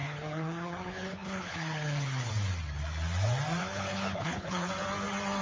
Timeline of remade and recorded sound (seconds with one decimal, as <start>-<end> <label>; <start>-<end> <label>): 0.0-2.3 remade; 2.3-3.6 recorded; 3.6-4.7 remade; 4.7-5.4 recorded